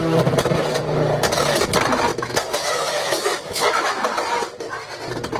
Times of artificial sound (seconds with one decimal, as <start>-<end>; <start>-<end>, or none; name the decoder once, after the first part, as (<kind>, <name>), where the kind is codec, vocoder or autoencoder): 2.1-4.1 (autoencoder, DAC-VAE)